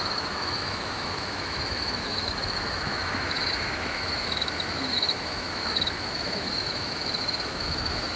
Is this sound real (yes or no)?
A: no